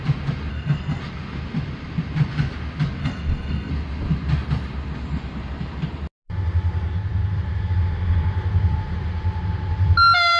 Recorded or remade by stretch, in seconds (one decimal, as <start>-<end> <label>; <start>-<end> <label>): 0.0-0.5 recorded; 0.5-1.0 remade; 1.0-3.0 recorded; 3.0-3.7 remade; 3.7-10.4 recorded